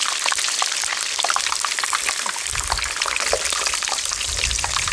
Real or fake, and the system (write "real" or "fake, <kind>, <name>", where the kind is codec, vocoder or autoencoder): real